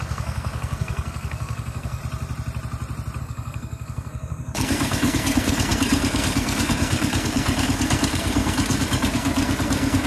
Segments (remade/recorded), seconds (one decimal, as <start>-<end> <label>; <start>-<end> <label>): 0.0-2.0 remade; 2.0-3.2 recorded; 3.2-10.1 remade